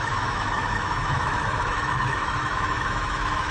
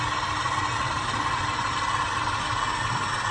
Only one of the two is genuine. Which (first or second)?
second